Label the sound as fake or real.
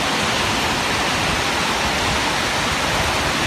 real